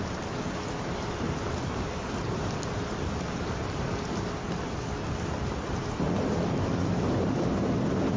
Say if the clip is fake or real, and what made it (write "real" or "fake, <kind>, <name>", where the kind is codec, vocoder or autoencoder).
real